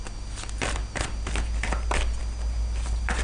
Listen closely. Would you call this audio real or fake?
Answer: real